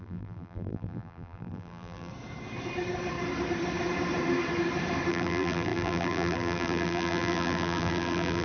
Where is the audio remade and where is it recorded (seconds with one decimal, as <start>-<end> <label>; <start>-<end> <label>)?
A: 0.0-2.1 remade; 2.1-5.1 recorded; 5.1-8.4 remade

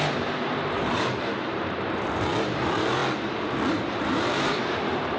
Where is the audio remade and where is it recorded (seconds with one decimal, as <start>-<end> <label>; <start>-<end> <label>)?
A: 0.0-3.0 remade; 3.0-3.7 recorded; 3.7-5.2 remade

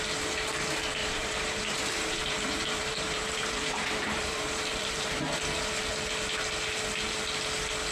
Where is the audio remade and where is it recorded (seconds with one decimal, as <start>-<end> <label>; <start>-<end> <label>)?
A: 0.0-1.0 recorded; 1.0-5.3 remade; 5.3-7.9 recorded

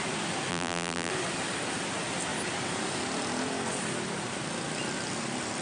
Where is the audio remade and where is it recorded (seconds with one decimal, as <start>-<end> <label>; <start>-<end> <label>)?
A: 0.0-0.5 recorded; 0.5-1.1 remade; 1.1-5.6 recorded